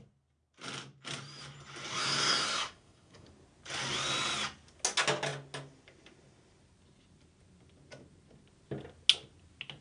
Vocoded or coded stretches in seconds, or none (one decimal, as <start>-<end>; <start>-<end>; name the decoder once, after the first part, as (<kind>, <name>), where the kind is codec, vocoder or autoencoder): 1.9-3.3 (codec, SNAC)